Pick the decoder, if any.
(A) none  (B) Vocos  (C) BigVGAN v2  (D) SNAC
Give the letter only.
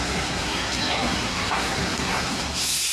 D